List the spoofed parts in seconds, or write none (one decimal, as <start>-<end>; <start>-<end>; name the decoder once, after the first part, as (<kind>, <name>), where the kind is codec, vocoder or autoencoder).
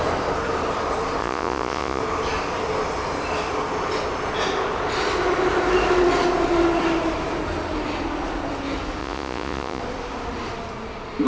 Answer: 1.2-2.0 (vocoder, Vocos); 9.0-9.8